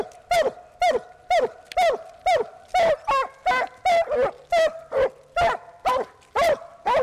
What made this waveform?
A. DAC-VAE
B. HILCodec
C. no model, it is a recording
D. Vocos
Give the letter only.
C